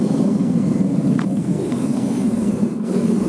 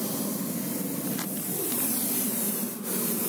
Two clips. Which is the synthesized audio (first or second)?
first